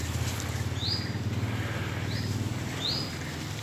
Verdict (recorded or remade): recorded